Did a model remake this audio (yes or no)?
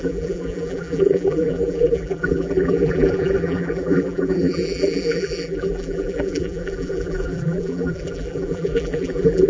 yes